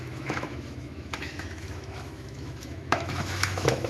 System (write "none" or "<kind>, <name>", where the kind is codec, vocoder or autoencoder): autoencoder, DAC-VAE